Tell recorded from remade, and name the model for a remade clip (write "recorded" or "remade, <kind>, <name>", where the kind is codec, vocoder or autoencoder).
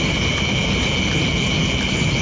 recorded